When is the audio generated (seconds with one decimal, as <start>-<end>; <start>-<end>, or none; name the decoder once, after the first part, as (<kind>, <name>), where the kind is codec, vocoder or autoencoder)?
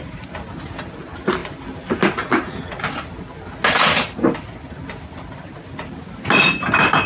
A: none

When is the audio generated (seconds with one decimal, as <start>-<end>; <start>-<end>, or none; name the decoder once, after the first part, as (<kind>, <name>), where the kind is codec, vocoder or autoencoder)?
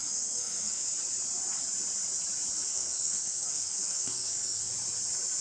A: 0.0-0.9 (codec, SNAC); 2.7-4.7